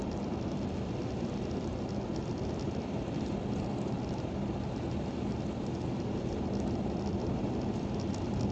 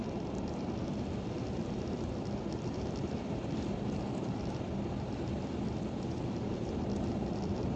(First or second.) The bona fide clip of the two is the first